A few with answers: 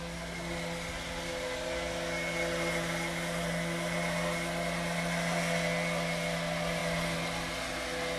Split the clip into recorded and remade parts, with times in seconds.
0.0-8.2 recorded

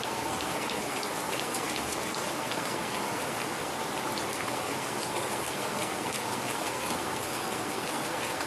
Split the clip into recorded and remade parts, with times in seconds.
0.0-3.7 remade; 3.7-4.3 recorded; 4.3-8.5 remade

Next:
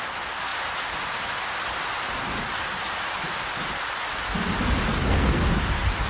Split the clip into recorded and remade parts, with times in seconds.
0.0-4.9 recorded; 4.9-5.4 remade; 5.4-6.1 recorded

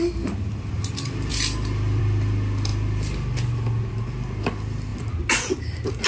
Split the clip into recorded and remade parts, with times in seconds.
0.0-6.1 recorded